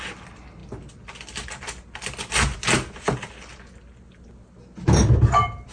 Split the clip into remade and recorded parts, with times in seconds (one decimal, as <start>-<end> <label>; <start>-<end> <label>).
0.0-5.7 recorded